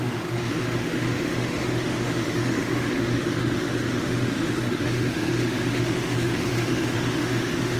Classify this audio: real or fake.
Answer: fake